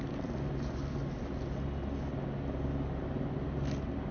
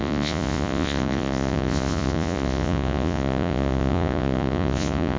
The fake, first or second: second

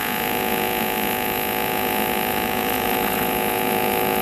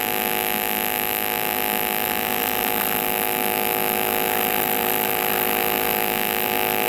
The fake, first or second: first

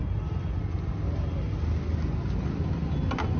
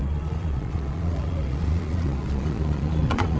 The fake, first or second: second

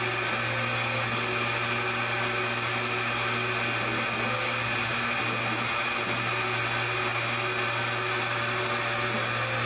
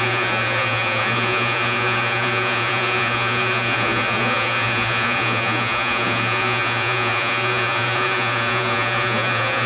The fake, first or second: second